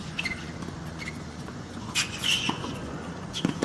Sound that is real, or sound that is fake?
fake